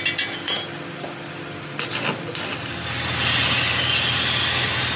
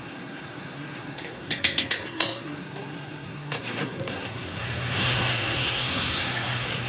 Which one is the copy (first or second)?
second